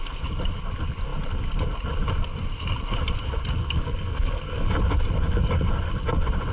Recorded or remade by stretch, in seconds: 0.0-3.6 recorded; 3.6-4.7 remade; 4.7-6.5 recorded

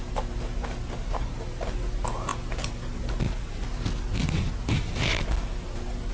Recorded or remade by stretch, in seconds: 0.0-6.1 recorded

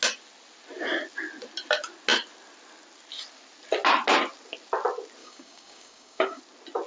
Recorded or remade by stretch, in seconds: 0.0-5.2 recorded; 5.2-6.4 remade; 6.4-6.9 recorded

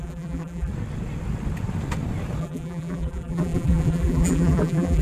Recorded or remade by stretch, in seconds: 0.0-0.7 remade; 0.7-2.4 recorded; 2.4-5.0 remade

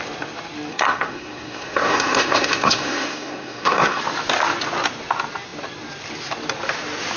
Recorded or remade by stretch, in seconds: 0.0-0.7 recorded; 0.7-4.0 remade; 4.0-7.2 recorded

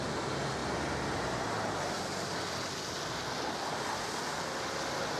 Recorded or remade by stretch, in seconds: 0.0-5.2 recorded

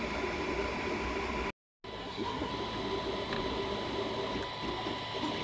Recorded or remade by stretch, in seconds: 0.0-2.0 recorded; 2.0-2.5 remade; 2.5-5.4 recorded

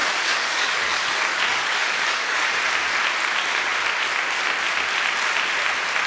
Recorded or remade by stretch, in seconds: 0.0-2.6 remade; 2.6-6.1 recorded